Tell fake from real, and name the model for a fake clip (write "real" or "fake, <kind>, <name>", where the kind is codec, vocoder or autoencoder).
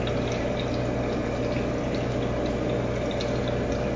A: real